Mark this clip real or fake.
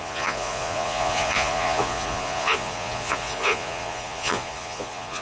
fake